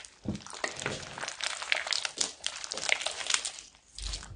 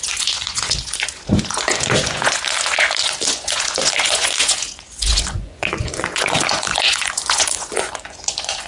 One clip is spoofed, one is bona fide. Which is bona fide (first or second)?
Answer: first